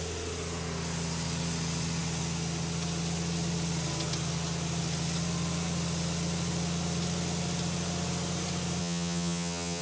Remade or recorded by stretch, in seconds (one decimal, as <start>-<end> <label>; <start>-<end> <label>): 0.0-8.8 recorded; 8.8-9.8 remade